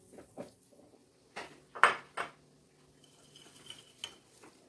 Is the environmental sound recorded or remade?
recorded